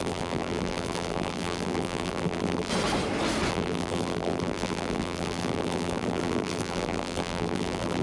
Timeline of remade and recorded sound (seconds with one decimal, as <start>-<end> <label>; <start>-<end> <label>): 0.0-2.7 remade; 2.7-3.5 recorded; 3.5-8.0 remade